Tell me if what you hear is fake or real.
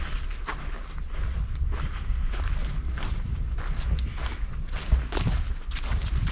real